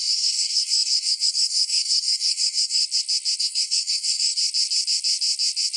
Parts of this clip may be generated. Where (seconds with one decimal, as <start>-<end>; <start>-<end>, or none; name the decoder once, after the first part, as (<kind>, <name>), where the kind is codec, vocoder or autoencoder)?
0.0-2.8 (codec, DAC); 3.4-4.4